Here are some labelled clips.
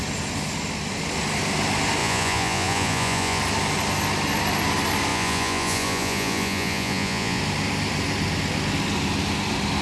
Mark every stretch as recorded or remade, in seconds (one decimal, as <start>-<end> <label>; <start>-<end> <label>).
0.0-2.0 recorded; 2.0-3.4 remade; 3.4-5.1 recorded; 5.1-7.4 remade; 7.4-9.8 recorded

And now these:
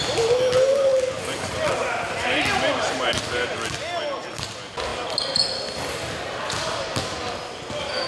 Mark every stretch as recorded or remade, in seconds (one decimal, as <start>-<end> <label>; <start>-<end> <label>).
0.0-8.1 recorded

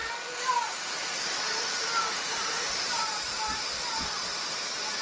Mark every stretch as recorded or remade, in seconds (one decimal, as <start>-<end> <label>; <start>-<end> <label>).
0.0-1.5 recorded; 1.5-3.7 remade; 3.7-5.0 recorded